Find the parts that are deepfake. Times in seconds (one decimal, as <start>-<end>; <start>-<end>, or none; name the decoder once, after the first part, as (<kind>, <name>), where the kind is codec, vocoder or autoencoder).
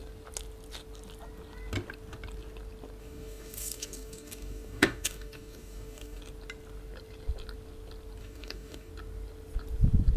3.0-6.2 (codec, DAC); 8.2-8.9